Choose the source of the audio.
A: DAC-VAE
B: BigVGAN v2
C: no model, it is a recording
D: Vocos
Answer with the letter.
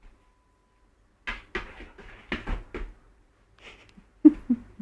C